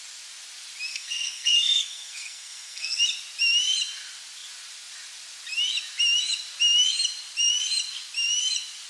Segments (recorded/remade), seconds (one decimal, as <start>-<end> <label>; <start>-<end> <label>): 0.0-0.9 recorded; 0.9-3.0 remade; 3.0-8.9 recorded